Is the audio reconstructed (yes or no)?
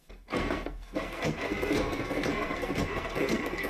yes